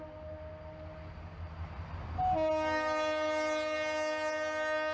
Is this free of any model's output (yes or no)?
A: yes